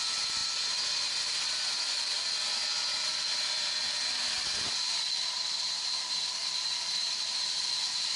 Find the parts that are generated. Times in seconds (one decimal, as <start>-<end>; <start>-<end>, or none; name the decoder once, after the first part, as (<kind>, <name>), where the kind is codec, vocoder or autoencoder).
none